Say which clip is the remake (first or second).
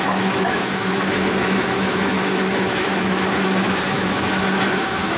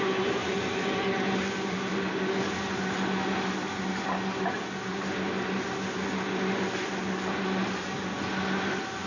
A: first